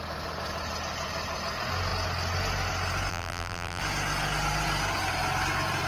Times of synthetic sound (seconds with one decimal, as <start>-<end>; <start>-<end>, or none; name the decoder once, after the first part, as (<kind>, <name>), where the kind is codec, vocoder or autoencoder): 3.1-3.8 (vocoder, BigVGAN v2)